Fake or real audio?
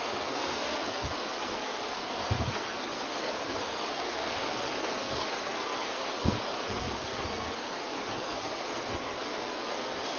fake